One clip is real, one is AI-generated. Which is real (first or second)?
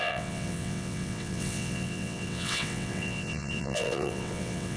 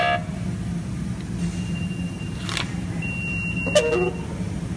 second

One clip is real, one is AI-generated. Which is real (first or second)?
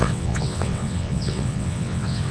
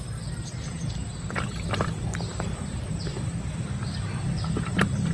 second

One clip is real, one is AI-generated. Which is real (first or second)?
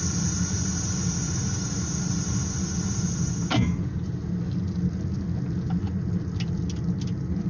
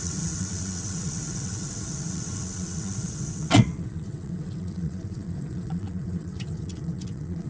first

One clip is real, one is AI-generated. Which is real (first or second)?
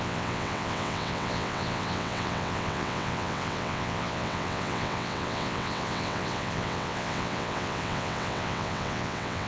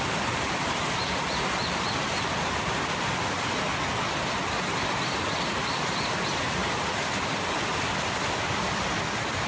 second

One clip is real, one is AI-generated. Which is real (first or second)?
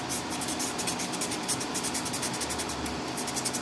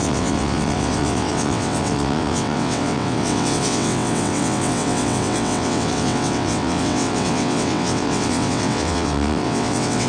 first